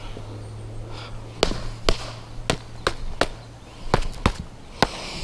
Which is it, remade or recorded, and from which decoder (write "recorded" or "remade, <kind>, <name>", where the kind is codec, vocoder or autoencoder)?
recorded